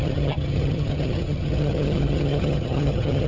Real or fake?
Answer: fake